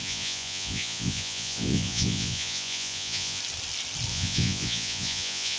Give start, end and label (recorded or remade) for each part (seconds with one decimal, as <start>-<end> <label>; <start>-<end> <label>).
0.0-3.4 remade; 3.4-4.1 recorded; 4.1-5.6 remade